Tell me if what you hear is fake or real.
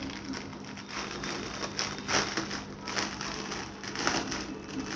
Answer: real